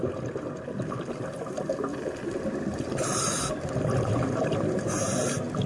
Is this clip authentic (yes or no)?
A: yes